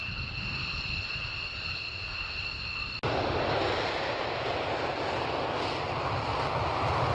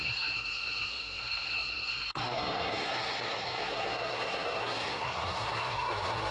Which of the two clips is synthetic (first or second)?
second